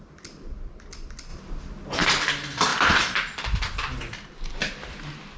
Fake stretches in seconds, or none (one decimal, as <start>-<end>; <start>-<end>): 2.7-4.3